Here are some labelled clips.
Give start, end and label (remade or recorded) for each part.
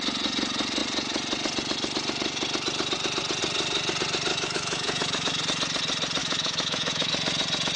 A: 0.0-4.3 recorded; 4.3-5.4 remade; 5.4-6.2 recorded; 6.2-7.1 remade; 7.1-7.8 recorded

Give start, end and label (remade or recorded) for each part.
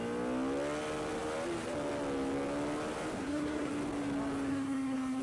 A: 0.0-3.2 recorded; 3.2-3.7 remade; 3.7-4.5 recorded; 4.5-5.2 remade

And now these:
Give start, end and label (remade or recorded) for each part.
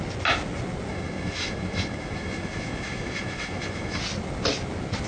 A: 0.0-0.9 recorded; 0.9-4.0 remade; 4.0-5.1 recorded